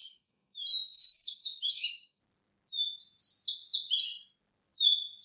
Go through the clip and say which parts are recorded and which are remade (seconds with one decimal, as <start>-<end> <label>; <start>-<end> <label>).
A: 0.0-2.2 remade; 2.2-5.2 recorded

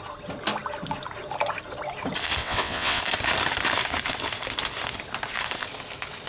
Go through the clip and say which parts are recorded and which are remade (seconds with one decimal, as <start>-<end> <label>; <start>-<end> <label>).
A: 0.0-2.4 recorded; 2.4-3.0 remade; 3.0-6.3 recorded